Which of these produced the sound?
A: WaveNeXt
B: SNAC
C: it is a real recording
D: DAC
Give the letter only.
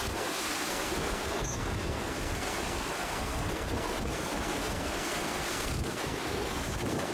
B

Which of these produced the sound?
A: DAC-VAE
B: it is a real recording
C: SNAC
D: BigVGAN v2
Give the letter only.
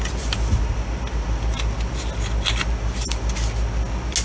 B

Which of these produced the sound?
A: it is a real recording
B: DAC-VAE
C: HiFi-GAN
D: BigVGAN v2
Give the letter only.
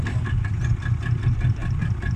A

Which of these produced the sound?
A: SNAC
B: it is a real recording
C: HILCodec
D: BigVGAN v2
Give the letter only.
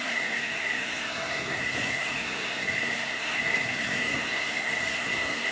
A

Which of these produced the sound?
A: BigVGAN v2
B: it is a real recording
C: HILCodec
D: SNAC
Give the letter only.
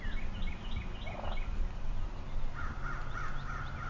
B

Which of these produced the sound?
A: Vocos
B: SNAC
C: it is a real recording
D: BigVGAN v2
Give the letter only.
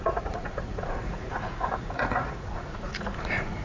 A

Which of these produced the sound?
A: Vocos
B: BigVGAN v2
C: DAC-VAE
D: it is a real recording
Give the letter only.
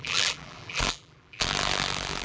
B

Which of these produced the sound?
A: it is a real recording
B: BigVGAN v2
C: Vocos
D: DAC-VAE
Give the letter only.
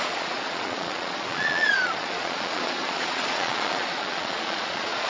C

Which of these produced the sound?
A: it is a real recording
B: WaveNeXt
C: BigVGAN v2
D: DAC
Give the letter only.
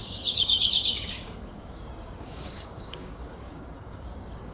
D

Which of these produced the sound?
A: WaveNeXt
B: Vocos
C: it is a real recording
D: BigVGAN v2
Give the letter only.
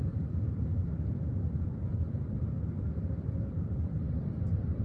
D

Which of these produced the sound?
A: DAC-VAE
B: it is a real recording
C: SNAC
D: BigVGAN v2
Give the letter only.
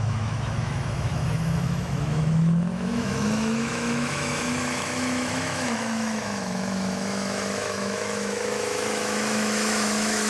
A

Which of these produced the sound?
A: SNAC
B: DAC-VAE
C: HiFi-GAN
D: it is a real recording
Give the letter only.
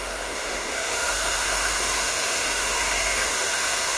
B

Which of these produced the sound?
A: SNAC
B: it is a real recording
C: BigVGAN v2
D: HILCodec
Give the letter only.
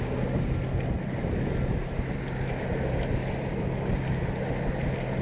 B